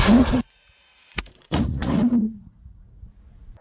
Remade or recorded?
remade